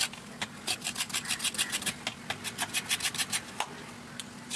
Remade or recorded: recorded